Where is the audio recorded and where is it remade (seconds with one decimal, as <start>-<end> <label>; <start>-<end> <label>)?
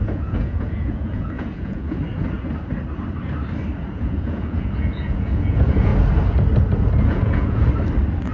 0.0-2.0 remade; 2.0-3.9 recorded; 3.9-5.9 remade; 5.9-7.0 recorded; 7.0-7.6 remade; 7.6-8.3 recorded